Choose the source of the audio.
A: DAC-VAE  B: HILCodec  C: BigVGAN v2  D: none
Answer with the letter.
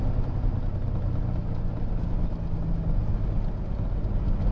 D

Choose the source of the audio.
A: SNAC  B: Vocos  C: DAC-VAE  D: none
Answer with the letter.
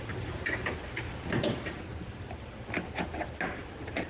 D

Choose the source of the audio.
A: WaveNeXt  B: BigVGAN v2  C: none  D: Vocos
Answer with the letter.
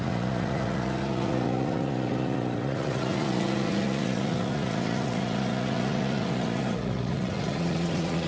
D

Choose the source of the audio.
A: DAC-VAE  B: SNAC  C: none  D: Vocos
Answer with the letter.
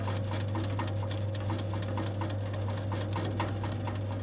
C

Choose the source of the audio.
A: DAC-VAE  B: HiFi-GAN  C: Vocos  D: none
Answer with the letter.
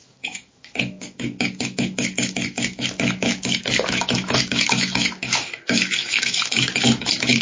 A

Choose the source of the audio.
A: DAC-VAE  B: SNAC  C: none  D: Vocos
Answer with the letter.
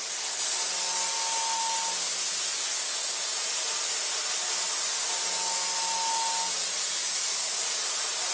C